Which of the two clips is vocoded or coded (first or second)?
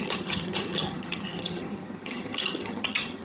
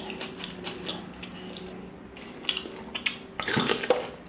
first